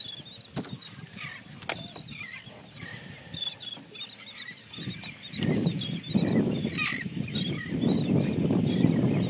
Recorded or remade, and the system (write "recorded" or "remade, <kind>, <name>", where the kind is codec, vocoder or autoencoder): recorded